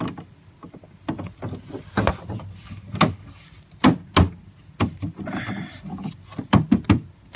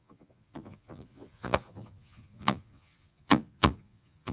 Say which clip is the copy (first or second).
second